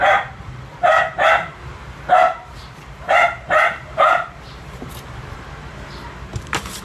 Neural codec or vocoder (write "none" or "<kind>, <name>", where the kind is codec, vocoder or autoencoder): vocoder, BigVGAN v2